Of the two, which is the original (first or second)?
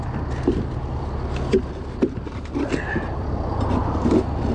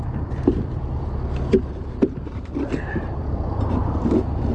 first